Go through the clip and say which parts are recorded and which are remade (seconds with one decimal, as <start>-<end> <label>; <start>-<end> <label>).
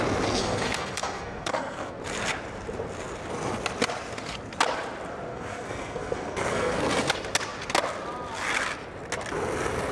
0.0-0.4 recorded; 0.4-2.0 remade; 2.0-5.3 recorded; 5.3-6.8 remade; 6.8-9.9 recorded